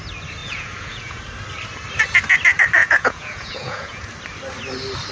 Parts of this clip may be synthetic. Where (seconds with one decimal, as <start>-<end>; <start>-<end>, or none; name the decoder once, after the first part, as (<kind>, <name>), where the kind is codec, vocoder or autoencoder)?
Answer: 0.4-1.2 (vocoder, Vocos); 2.8-4.1